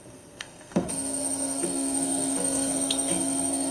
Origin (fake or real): fake